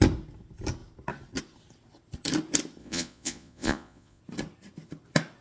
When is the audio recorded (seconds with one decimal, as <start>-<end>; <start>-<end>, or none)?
0.0-2.8; 4.2-5.4